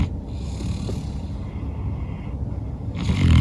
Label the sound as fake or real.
real